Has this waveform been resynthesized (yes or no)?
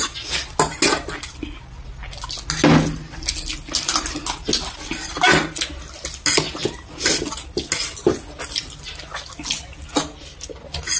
no